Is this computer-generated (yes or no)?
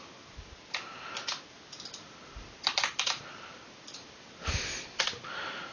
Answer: no